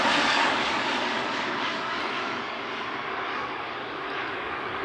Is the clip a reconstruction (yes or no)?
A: yes